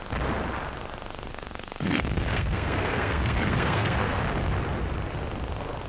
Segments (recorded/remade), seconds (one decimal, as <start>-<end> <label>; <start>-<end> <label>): 0.0-1.3 recorded; 1.3-4.2 remade; 4.2-5.9 recorded